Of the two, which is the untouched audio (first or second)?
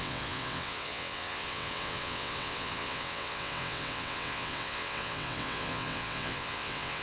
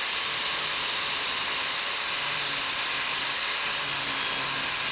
second